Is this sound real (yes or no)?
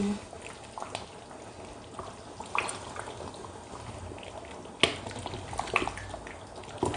yes